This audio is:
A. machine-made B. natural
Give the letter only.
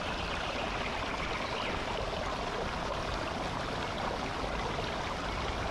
B